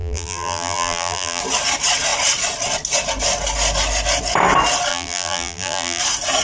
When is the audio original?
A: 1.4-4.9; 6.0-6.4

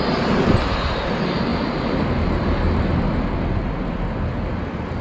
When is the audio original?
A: 0.0-5.0